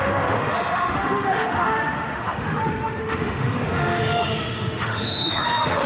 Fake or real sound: fake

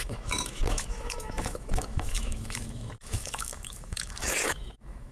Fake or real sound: fake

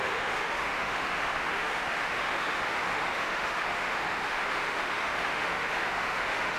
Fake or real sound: fake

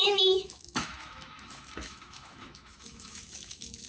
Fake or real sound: fake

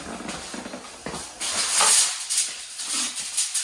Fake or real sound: real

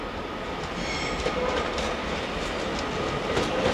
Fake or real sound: real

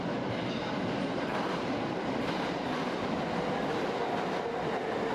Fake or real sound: real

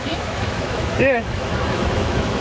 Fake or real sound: fake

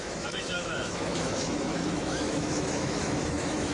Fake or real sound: fake